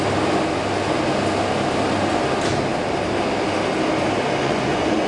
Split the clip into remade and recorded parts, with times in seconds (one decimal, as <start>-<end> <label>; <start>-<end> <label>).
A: 0.0-4.4 recorded; 4.4-5.1 remade